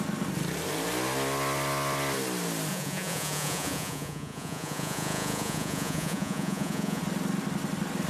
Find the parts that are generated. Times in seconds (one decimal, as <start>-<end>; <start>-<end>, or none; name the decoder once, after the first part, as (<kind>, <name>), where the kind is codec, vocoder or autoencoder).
2.7-7.0 (vocoder, Vocos)

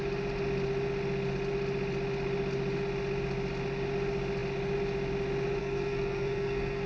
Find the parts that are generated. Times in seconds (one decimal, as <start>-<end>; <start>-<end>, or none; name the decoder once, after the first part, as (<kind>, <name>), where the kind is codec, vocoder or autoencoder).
5.6-6.9 (codec, SNAC)

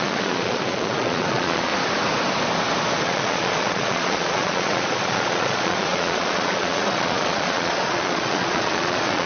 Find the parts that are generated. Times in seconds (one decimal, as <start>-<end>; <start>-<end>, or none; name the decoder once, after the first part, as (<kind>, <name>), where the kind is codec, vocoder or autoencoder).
0.0-1.7 (vocoder, Vocos); 3.0-9.3

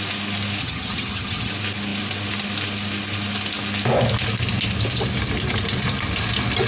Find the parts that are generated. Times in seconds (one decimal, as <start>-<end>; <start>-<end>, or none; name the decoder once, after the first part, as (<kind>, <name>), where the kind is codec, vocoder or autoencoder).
0.6-1.5 (vocoder, HiFi-GAN)

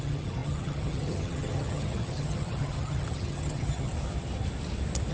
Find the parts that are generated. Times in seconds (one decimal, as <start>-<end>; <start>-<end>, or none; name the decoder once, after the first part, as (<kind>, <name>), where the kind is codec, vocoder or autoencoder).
0.0-3.9 (vocoder, HiFi-GAN)

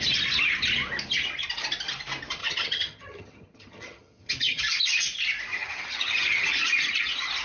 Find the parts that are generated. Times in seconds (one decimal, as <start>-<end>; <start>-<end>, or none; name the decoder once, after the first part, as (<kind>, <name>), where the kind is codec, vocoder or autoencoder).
2.4-4.6 (vocoder, HiFi-GAN); 5.5-6.5

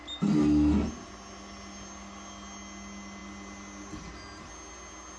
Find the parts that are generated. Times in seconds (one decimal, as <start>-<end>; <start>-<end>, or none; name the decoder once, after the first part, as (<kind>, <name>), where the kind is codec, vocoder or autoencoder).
none